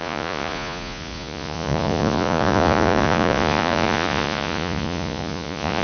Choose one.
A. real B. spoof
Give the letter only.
B